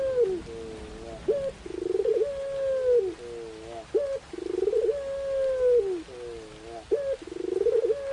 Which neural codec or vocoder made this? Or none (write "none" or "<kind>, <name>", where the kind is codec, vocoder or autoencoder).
none